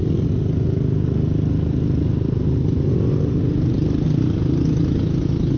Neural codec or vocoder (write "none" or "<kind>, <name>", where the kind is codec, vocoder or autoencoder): none